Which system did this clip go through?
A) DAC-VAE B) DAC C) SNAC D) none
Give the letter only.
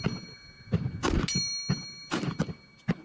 D